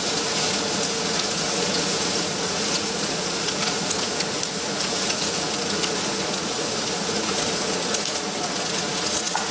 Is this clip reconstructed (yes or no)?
yes